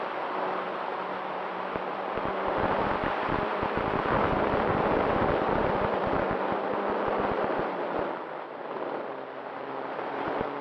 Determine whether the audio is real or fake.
fake